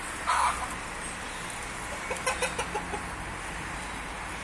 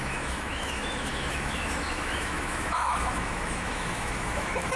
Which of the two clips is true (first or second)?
first